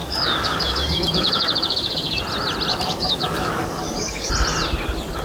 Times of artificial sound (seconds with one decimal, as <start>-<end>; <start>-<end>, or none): 0.0-2.2; 2.7-4.3